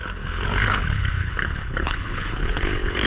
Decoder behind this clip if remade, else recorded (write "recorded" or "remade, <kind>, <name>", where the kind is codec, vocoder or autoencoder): remade, codec, HILCodec